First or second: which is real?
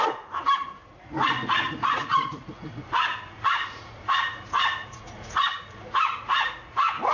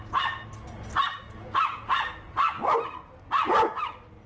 second